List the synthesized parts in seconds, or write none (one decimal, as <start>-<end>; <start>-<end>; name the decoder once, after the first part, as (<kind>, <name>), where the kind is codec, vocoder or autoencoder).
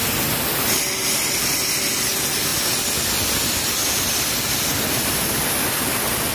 none